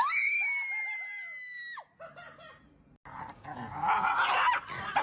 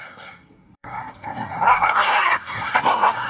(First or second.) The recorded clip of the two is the first